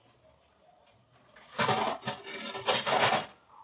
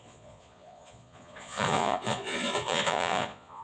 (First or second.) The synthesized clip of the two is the second